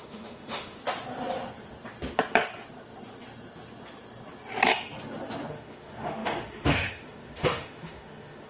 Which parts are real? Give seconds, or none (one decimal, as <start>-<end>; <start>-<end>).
0.8-5.5